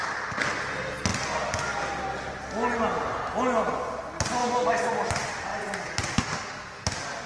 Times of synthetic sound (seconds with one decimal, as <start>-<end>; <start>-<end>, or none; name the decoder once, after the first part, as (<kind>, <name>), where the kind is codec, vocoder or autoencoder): 4.4-5.1 (autoencoder, DAC-VAE)